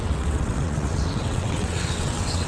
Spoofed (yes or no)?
yes